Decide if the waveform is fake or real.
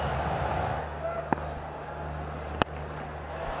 real